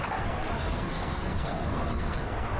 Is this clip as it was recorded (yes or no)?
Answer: no